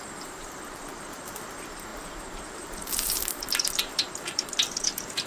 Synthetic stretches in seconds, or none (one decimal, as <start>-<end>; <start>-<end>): 0.0-5.3